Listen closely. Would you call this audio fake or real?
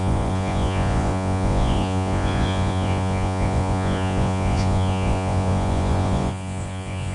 fake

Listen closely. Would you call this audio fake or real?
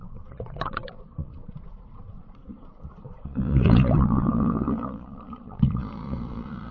fake